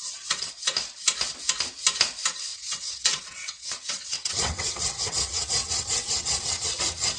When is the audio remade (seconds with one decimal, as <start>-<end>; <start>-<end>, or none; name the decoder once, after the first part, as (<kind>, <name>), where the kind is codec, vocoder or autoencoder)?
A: 0.0-0.5 (vocoder, WaveNeXt); 2.5-6.8